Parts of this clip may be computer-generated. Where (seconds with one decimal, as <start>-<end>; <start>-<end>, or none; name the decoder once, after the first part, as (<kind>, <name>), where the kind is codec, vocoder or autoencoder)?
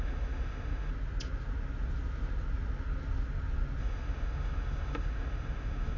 0.0-0.9 (autoencoder, DAC-VAE); 3.8-6.0